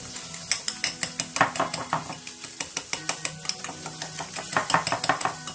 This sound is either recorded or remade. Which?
recorded